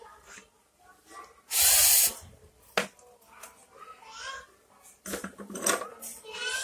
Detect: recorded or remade recorded